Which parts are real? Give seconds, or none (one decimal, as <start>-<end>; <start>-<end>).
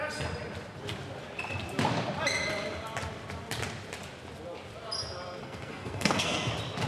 0.0-5.4; 6.5-6.9